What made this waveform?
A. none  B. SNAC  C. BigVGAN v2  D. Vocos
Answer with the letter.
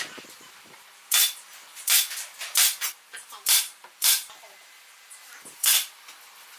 C